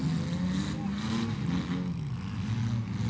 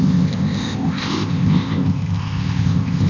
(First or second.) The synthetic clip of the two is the second